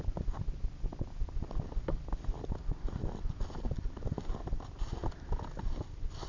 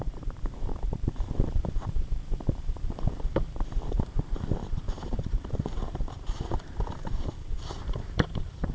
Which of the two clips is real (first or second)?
first